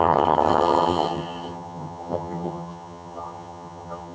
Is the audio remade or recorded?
remade